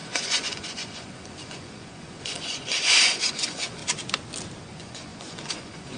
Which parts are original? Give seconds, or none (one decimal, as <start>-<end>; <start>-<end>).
3.8-4.6